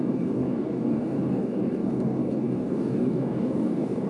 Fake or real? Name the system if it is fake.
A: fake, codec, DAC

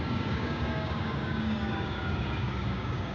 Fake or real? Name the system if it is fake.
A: fake, codec, DAC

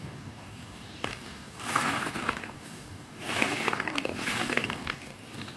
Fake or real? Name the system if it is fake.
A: fake, codec, DAC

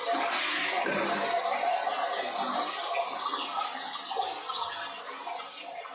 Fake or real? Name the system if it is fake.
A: real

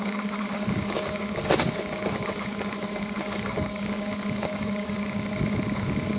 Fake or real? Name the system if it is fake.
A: fake, codec, DAC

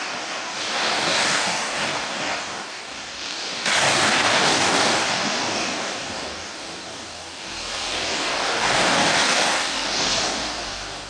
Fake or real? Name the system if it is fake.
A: fake, codec, DAC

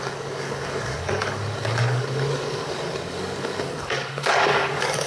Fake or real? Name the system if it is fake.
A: fake, codec, DAC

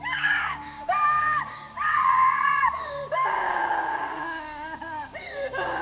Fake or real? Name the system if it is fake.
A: fake, codec, DAC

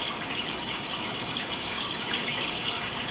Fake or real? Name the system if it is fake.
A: fake, codec, DAC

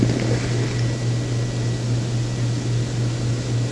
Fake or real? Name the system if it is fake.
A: real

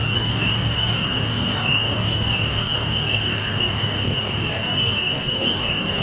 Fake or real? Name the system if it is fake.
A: fake, codec, DAC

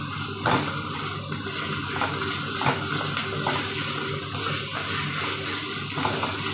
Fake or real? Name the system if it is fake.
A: real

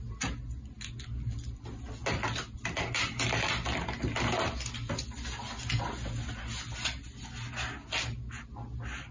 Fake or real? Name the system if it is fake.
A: real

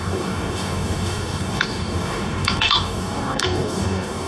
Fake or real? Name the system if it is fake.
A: fake, codec, DAC